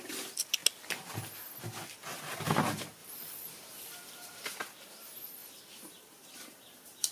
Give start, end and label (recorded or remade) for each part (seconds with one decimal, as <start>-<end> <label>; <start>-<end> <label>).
0.0-3.0 recorded; 3.0-4.6 remade; 4.6-5.4 recorded; 5.4-7.1 remade